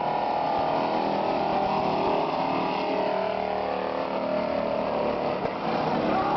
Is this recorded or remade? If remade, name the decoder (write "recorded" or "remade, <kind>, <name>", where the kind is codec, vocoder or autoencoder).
recorded